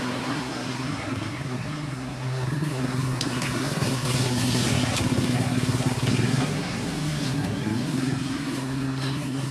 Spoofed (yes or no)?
yes